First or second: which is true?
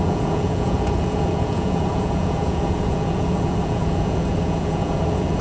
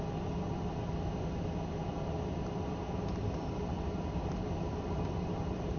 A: second